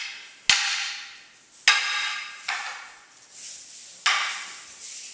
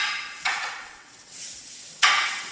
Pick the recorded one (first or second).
first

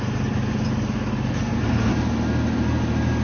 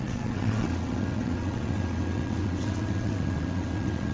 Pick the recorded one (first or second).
first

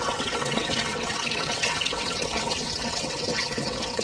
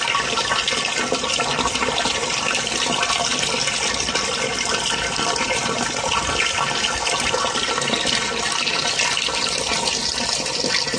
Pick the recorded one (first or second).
second